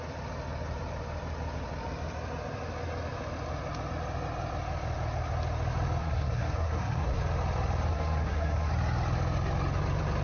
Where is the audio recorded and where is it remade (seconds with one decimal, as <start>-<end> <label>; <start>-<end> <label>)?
0.0-6.0 recorded; 6.0-7.2 remade; 7.2-7.9 recorded; 7.9-8.7 remade; 8.7-10.2 recorded